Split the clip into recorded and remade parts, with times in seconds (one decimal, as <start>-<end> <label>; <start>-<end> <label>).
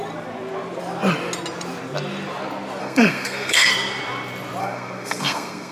0.0-2.8 recorded; 2.8-3.7 remade; 3.7-4.6 recorded; 4.6-5.7 remade